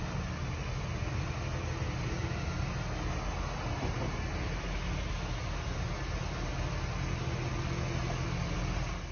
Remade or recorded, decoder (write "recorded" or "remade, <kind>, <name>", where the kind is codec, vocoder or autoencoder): recorded